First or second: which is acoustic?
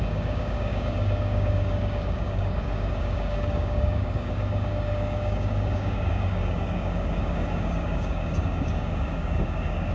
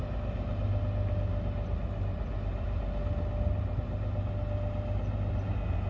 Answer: second